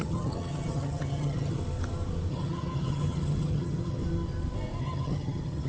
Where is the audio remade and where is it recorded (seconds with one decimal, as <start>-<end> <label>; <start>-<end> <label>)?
0.0-1.6 remade; 1.6-2.3 recorded; 2.3-4.0 remade; 4.0-4.8 recorded; 4.8-5.7 remade